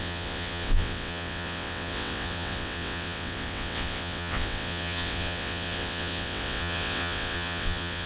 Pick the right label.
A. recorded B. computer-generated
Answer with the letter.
B